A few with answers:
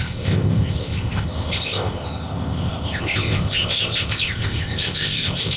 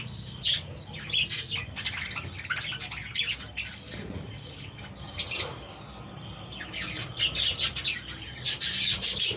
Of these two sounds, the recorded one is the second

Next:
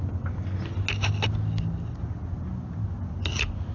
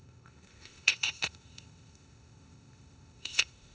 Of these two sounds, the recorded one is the first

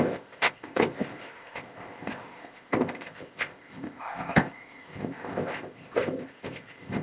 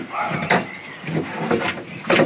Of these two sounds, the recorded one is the second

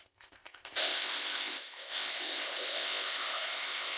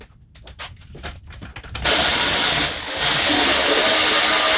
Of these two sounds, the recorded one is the second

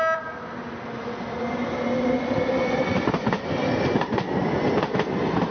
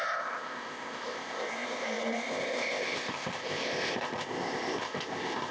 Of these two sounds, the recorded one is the first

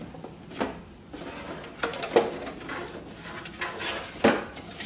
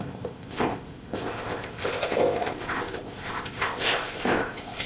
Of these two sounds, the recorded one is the first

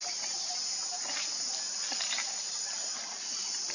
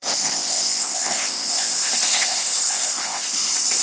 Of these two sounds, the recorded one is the first